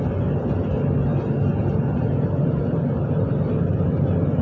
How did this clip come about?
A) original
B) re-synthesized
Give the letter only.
A